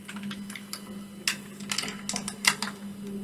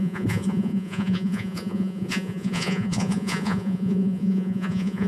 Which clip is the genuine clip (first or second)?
first